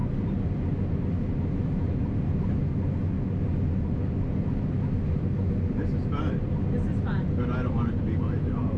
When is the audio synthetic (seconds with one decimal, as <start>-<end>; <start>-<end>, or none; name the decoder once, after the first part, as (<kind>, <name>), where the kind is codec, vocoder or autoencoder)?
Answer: none